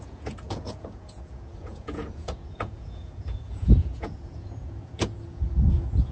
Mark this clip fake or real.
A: fake